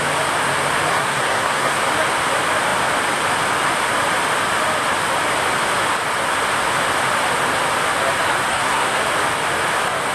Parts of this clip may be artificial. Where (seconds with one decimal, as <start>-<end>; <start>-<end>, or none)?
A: 0.9-1.8; 8.5-9.0